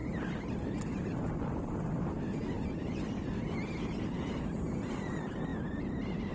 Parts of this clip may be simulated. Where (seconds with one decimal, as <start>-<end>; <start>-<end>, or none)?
3.8-5.5